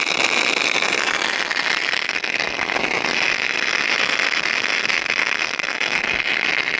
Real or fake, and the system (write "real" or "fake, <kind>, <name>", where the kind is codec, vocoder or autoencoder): real